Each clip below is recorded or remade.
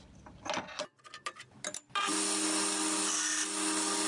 recorded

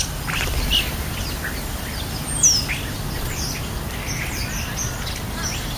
recorded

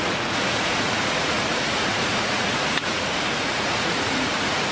remade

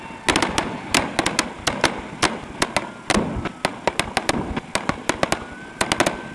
recorded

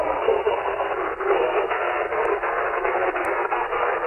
remade